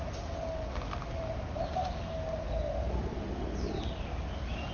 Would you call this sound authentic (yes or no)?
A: yes